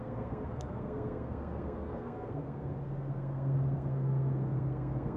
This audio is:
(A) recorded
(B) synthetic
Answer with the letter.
B